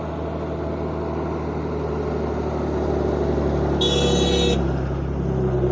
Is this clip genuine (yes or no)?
yes